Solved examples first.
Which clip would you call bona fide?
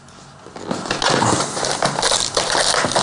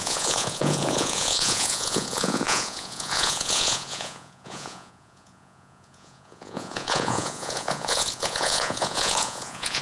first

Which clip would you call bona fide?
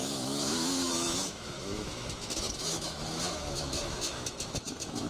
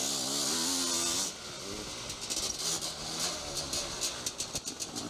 second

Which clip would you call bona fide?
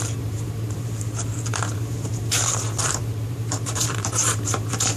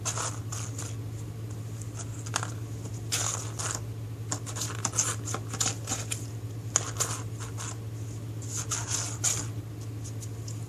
second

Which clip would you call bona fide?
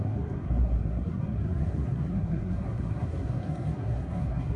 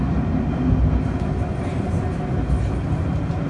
second